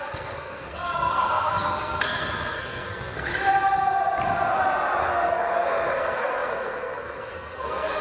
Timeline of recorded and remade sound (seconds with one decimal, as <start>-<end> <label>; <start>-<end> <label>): 0.0-3.3 remade; 3.3-5.0 recorded; 5.0-8.0 remade